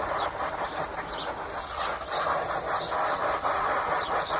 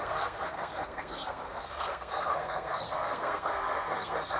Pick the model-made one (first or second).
second